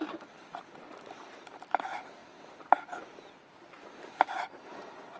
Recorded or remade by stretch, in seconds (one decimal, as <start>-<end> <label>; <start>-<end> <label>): 0.0-5.2 recorded